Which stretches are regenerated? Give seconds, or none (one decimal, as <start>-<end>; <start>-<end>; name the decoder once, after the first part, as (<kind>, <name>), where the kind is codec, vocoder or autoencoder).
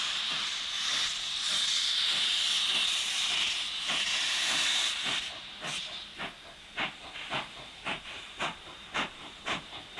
0.0-5.3 (vocoder, BigVGAN v2); 7.3-10.0